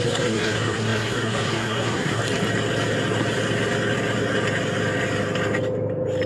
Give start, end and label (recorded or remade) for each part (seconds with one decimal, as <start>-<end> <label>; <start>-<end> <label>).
0.0-2.2 remade; 2.2-6.3 recorded